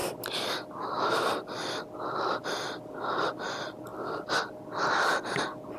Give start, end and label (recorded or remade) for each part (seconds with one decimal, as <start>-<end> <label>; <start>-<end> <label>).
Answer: 0.0-5.8 recorded